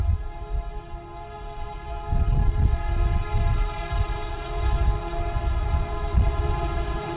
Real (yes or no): yes